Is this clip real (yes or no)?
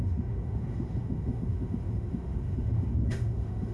no